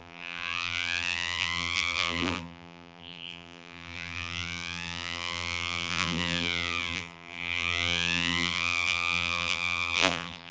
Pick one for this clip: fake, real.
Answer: fake